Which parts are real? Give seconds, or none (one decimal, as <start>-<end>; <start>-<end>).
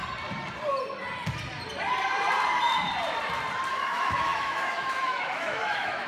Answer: 0.0-3.7